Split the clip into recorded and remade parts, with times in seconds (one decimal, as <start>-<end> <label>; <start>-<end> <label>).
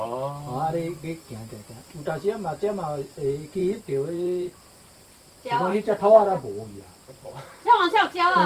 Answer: 0.0-3.6 recorded; 3.6-6.1 remade; 6.1-8.5 recorded